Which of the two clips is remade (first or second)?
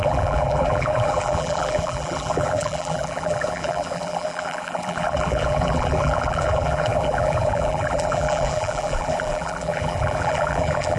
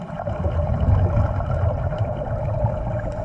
first